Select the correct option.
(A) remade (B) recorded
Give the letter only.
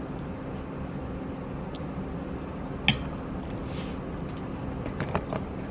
B